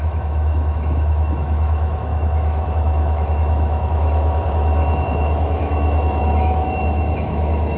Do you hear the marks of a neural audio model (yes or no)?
yes